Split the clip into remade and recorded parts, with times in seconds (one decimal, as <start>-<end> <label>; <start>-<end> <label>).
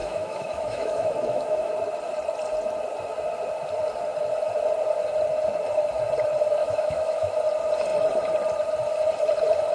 0.0-1.7 remade; 1.7-6.6 recorded; 6.6-7.4 remade; 7.4-9.7 recorded